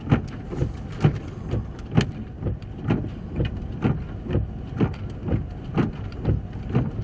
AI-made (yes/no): no